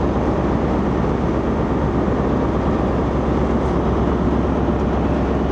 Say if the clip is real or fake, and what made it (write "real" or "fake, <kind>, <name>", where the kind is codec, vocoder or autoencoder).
real